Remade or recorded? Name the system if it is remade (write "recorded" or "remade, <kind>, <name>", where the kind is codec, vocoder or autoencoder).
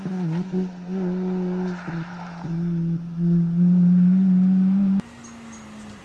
recorded